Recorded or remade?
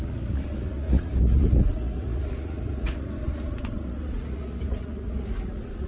remade